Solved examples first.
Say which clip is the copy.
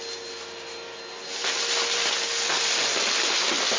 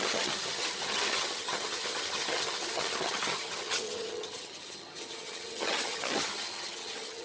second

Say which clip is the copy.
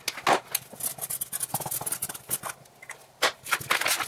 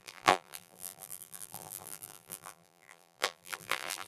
second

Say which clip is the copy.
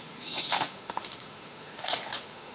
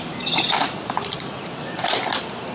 first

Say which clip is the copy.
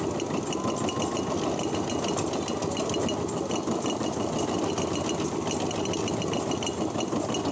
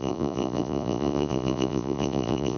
second